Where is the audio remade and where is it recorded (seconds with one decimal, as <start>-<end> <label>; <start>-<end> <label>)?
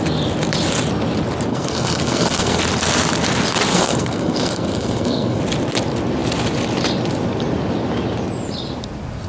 0.0-1.5 recorded; 1.5-2.6 remade; 2.6-3.7 recorded; 3.7-5.4 remade; 5.4-9.3 recorded